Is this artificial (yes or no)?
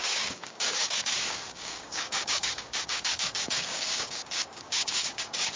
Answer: yes